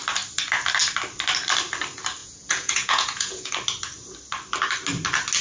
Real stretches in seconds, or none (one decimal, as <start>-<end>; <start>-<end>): 0.0-2.2; 3.5-5.4